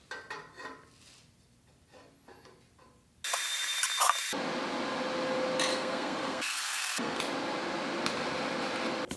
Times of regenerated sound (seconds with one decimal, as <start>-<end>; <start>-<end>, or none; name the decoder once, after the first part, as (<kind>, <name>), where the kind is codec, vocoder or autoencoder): 5.7-7.2 (codec, SNAC)

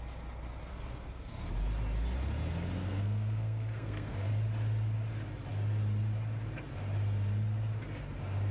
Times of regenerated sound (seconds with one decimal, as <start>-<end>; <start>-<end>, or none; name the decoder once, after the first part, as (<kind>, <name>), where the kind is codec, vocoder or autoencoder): 0.7-1.4 (codec, SNAC); 2.8-4.3

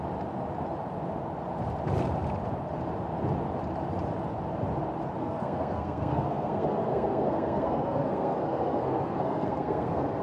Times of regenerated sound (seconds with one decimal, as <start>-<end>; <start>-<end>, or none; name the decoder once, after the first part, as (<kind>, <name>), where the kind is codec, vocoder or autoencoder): 5.2-10.2 (codec, SNAC)

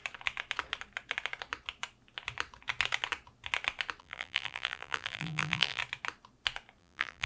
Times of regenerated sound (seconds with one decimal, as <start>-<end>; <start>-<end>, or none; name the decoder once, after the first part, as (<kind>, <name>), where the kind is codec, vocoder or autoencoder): 4.0-5.8 (vocoder, BigVGAN v2); 6.8-7.3

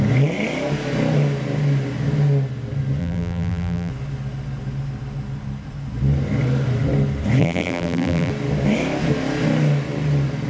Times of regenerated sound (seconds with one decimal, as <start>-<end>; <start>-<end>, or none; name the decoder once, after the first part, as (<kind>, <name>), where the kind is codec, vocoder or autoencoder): 3.0-3.9 (vocoder, BigVGAN v2); 7.4-8.3

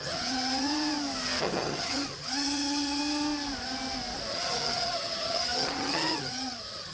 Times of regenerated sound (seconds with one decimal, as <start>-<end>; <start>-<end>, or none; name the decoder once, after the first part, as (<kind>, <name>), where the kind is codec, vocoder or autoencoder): 0.0-0.7 (vocoder, HiFi-GAN); 1.4-3.0; 4.3-6.9